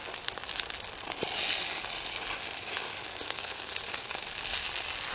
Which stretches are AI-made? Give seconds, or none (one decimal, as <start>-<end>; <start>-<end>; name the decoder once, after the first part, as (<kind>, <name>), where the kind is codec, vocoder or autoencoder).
3.1-3.7 (codec, SNAC)